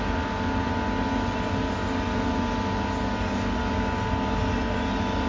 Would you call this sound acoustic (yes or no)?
yes